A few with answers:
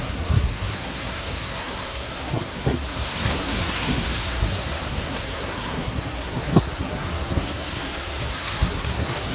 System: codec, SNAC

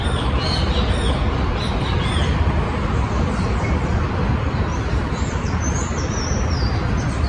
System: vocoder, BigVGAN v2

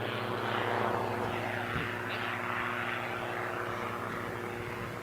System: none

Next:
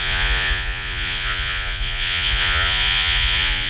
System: vocoder, Vocos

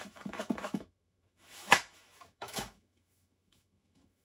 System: autoencoder, DAC-VAE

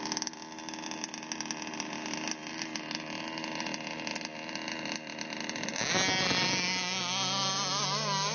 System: none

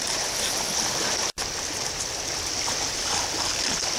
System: none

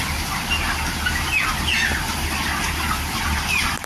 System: none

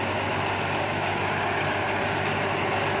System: none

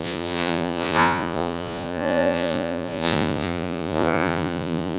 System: vocoder, Vocos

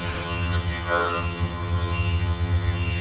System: vocoder, HiFi-GAN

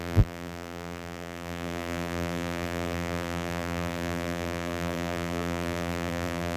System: vocoder, BigVGAN v2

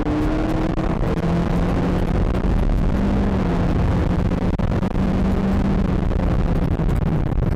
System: none